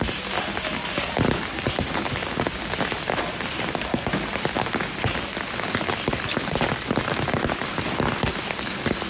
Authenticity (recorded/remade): recorded